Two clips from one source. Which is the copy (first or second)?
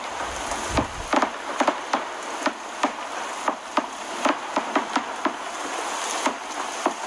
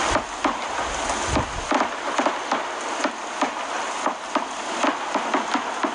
first